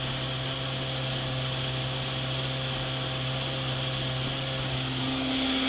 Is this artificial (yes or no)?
no